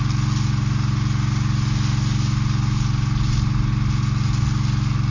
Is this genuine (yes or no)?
yes